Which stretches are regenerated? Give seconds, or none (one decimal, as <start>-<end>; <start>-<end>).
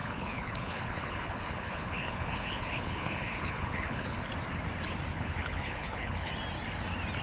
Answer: 0.0-4.3; 5.1-6.3